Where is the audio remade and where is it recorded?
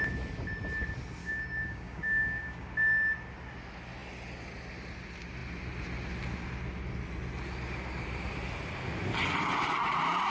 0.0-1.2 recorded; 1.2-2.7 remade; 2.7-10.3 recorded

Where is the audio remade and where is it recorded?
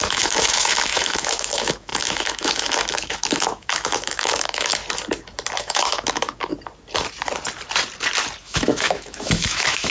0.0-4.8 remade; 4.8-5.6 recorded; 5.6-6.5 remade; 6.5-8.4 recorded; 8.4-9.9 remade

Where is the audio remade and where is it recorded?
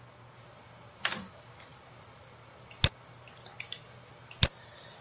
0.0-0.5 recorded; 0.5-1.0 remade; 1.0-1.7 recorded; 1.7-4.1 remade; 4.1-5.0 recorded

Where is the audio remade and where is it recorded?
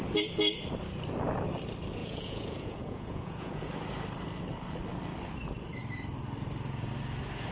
0.0-2.0 recorded; 2.0-3.7 remade; 3.7-7.5 recorded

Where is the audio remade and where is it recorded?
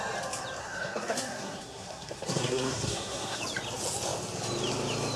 0.0-0.6 recorded; 0.6-3.4 remade; 3.4-5.2 recorded